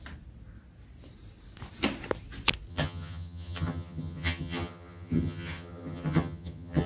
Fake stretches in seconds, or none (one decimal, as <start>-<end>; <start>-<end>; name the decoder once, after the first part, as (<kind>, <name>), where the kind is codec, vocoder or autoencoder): 2.7-6.9 (vocoder, HiFi-GAN)